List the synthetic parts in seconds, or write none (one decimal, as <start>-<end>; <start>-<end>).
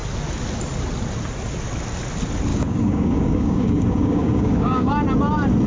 2.5-4.9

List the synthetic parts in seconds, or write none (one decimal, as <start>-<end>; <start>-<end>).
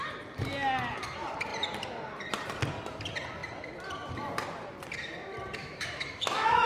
5.6-6.7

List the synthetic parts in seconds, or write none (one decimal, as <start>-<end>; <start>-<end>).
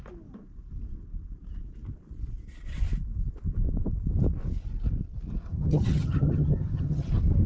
5.5-7.1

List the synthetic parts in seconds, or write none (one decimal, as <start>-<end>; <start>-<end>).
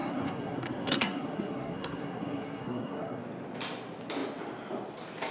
0.0-3.2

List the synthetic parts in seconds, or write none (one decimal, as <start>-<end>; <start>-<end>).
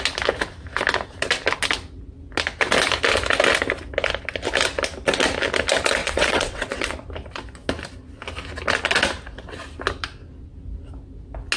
6.0-6.9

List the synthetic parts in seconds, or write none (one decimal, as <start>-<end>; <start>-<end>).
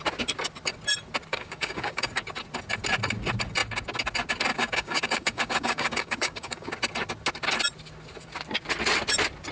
1.3-2.1; 4.5-6.7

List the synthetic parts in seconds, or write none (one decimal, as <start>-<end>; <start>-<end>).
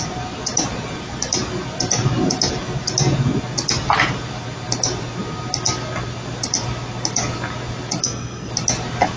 8.0-8.5